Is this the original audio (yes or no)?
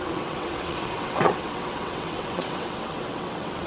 no